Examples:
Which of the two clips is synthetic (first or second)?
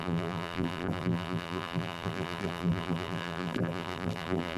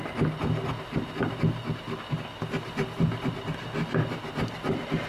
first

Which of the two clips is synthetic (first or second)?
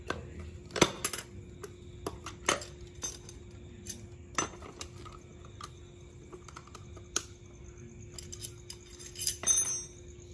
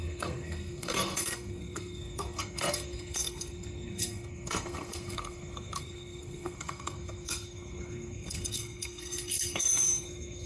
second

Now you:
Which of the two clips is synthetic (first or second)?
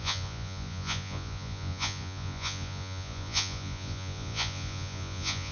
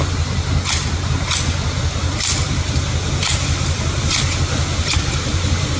first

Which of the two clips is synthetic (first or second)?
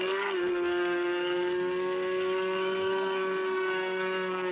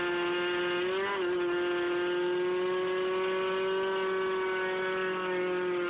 first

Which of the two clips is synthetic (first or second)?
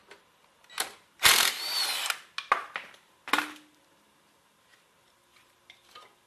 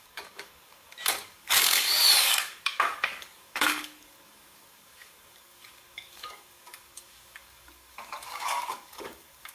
second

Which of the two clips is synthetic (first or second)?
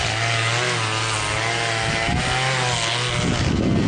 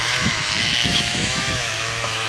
second